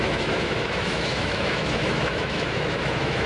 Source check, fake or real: fake